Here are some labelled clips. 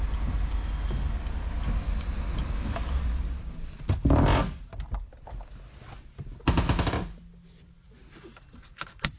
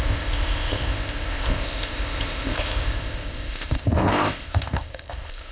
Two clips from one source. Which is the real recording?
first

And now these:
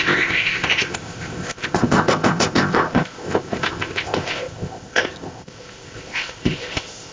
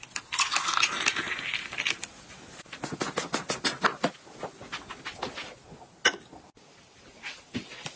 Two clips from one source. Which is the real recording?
second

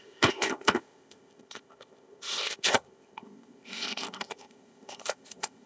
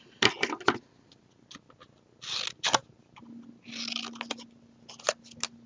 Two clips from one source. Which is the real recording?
second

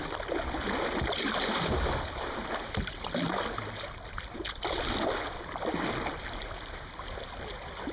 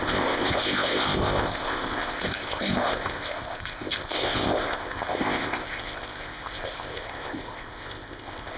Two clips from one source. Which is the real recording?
first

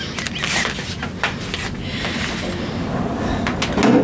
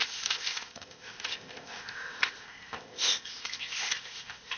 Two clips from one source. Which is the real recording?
first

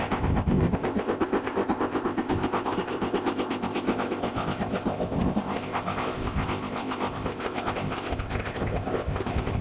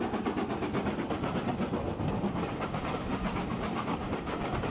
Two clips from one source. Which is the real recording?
second